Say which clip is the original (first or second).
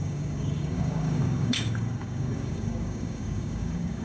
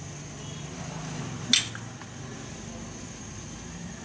second